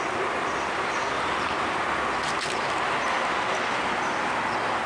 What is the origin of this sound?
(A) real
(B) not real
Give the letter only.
A